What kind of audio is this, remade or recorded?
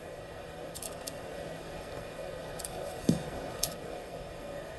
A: remade